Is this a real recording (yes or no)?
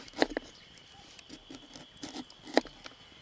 yes